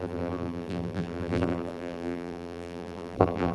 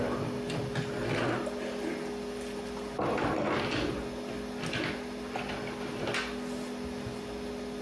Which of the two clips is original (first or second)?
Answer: second